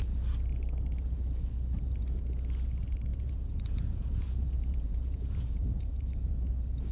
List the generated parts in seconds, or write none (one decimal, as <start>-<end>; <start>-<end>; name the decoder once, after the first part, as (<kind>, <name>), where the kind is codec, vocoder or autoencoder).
3.1-6.3 (vocoder, Vocos)